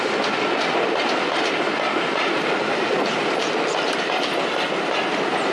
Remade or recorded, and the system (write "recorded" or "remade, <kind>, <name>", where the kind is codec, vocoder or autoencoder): recorded